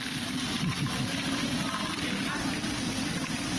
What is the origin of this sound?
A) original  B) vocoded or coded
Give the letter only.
A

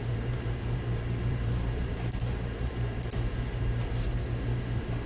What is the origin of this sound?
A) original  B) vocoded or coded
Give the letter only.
B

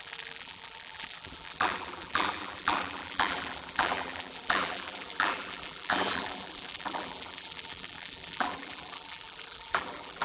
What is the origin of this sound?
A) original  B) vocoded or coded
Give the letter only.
B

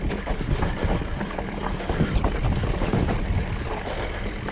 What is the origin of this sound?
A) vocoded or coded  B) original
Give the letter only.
B